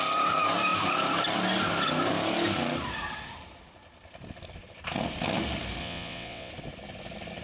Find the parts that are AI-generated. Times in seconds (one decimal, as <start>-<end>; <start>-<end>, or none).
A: 5.8-6.5